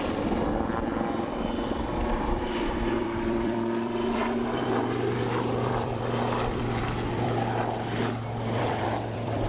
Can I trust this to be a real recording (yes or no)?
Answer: no